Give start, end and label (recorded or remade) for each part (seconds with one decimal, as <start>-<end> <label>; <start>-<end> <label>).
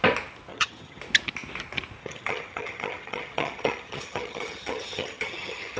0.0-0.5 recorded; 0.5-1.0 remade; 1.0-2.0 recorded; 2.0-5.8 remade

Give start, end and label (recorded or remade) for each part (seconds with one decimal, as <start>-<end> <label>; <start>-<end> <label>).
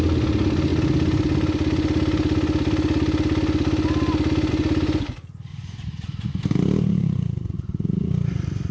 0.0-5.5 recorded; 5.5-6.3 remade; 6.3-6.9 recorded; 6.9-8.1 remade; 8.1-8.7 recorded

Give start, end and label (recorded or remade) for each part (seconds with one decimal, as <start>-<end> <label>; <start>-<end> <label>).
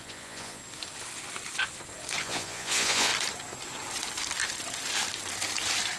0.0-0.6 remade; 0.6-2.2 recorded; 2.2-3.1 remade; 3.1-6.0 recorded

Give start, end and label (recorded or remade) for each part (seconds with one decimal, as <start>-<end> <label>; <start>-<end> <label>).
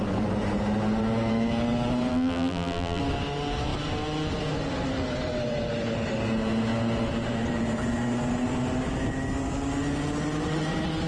0.0-2.1 recorded; 2.1-3.0 remade; 3.0-11.1 recorded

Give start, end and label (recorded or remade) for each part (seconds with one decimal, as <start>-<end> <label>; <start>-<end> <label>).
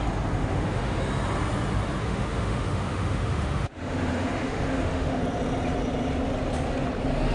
0.0-0.4 recorded; 0.4-1.0 remade; 1.0-2.0 recorded; 2.0-5.2 remade; 5.2-7.3 recorded